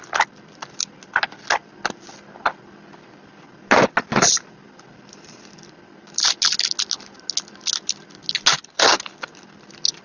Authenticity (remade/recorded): recorded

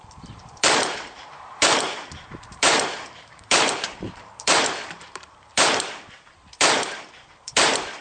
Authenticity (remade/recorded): remade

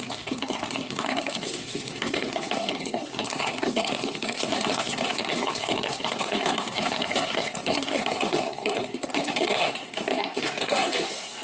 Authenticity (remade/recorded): remade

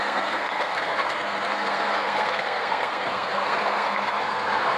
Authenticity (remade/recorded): remade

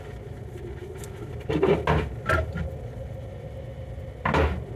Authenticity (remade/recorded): recorded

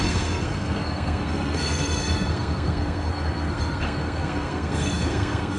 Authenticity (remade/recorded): remade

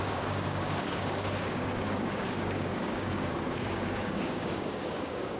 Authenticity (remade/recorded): remade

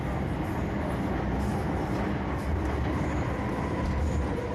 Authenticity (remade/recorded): recorded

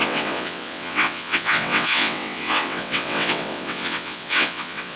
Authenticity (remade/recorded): remade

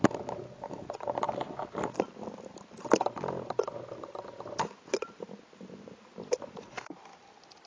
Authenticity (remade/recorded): recorded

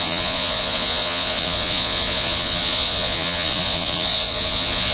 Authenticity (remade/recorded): remade